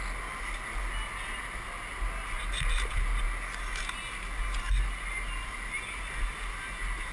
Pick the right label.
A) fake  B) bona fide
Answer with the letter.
B